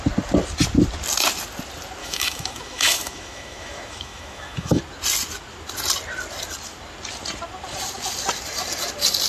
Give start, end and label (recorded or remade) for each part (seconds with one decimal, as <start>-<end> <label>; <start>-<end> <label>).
0.0-2.0 recorded; 2.0-4.8 remade; 4.8-9.3 recorded